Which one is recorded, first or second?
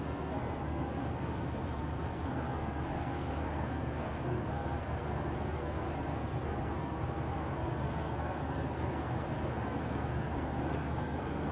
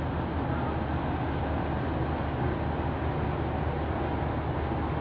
second